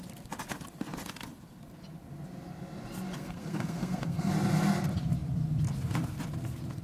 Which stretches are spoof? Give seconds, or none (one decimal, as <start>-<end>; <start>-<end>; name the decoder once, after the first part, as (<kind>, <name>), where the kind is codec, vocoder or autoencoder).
3.2-4.3 (codec, SNAC)